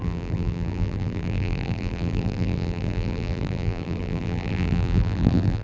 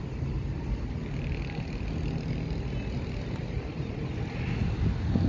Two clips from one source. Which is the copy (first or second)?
first